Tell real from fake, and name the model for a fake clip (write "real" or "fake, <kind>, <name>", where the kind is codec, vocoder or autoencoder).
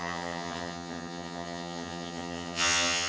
fake, vocoder, HiFi-GAN